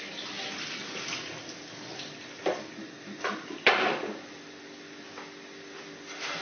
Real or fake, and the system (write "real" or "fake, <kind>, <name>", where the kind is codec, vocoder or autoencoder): real